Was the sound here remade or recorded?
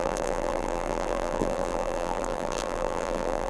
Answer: remade